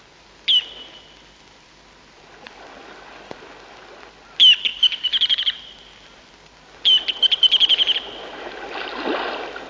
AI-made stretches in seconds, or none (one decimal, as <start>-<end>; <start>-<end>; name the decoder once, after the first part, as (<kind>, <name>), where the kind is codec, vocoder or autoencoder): 4.7-5.6 (vocoder, BigVGAN v2)